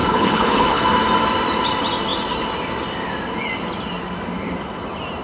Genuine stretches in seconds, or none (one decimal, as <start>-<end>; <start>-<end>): 0.8-5.2